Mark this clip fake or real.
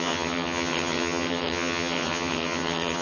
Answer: fake